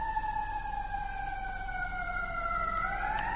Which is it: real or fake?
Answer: real